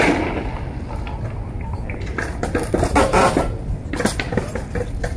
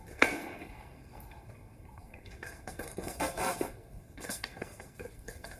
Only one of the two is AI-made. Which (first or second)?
second